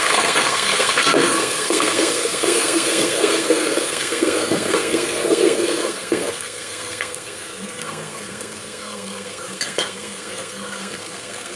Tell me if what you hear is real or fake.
fake